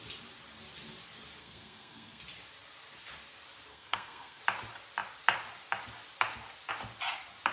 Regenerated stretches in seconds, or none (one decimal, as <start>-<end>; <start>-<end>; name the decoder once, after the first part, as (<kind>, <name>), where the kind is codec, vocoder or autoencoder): 1.4-2.2 (codec, SNAC); 3.7-4.4